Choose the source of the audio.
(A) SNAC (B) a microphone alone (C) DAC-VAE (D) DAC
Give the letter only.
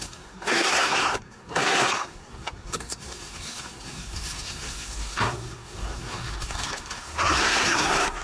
A